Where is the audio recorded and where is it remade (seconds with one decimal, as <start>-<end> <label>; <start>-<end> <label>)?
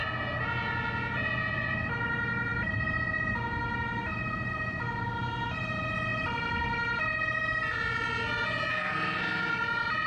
0.0-4.2 recorded; 4.2-5.2 remade; 5.2-6.1 recorded; 6.1-10.1 remade